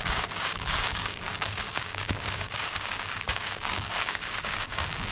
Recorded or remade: remade